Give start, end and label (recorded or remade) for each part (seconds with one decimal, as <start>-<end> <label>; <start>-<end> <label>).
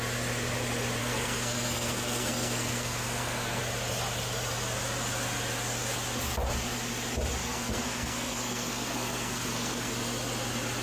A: 0.0-1.0 recorded; 1.0-3.6 remade; 3.6-7.4 recorded; 7.4-9.9 remade; 9.9-10.8 recorded